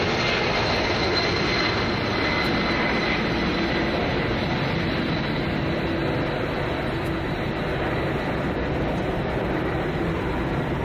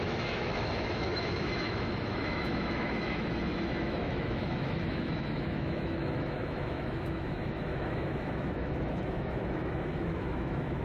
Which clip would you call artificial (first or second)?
second